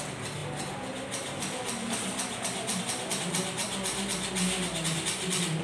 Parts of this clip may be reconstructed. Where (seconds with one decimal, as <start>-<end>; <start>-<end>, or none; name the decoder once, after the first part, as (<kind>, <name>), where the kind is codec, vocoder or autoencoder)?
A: none